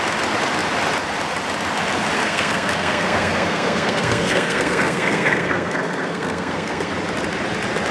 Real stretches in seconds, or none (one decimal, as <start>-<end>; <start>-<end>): 0.0-2.2; 6.9-7.9